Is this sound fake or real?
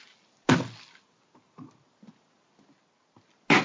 real